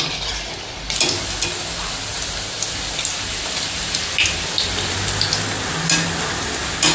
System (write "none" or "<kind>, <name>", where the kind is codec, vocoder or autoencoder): none